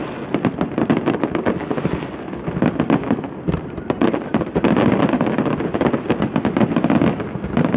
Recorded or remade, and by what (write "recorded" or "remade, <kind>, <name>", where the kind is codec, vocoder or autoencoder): recorded